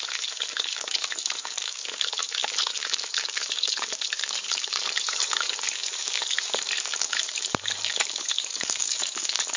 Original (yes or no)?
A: no